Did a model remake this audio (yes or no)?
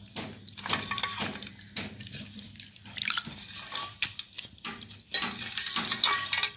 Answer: no